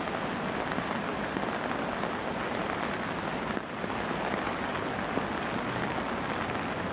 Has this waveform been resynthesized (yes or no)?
no